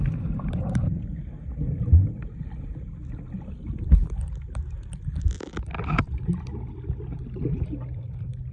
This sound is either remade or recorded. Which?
recorded